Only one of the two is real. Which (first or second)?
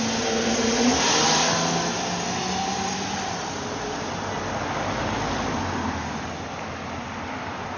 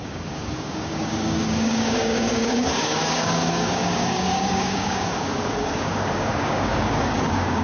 first